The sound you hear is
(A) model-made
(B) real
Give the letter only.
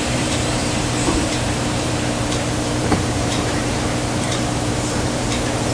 A